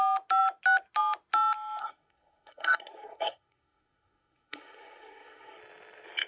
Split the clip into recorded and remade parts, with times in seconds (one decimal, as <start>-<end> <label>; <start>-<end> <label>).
0.0-1.8 recorded; 1.8-5.6 remade; 5.6-6.3 recorded